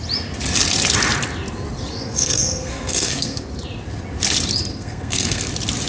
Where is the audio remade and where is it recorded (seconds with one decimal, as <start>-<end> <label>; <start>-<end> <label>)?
0.0-1.9 recorded; 1.9-3.4 remade; 3.4-4.7 recorded; 4.7-5.5 remade; 5.5-5.9 recorded